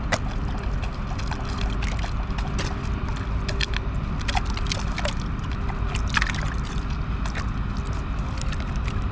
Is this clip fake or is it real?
real